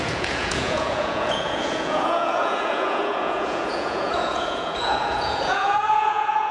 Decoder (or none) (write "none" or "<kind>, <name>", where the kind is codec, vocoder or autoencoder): vocoder, Vocos